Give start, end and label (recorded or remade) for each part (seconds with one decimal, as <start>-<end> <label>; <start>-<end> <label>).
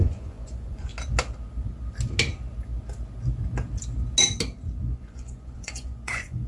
0.0-0.9 remade; 0.9-4.8 recorded; 4.8-6.5 remade